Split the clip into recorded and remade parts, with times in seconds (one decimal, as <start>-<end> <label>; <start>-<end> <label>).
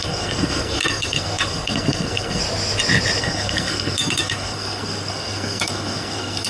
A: 0.0-2.4 remade; 2.4-3.2 recorded; 3.2-6.5 remade